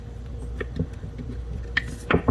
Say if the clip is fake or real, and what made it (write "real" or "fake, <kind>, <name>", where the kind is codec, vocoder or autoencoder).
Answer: fake, vocoder, BigVGAN v2